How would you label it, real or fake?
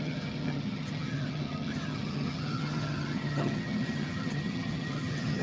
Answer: fake